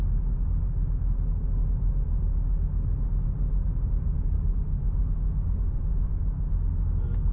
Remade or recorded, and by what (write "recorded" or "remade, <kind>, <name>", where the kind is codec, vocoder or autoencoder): recorded